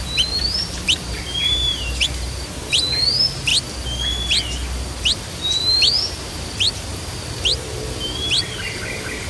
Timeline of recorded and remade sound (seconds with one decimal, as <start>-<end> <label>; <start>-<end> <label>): 0.0-3.5 remade; 3.5-5.0 recorded; 5.0-9.3 remade